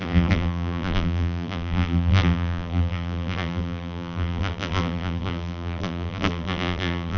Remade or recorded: remade